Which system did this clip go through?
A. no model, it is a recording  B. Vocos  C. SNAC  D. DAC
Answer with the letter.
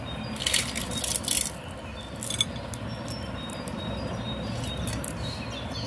A